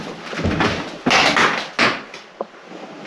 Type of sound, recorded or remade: recorded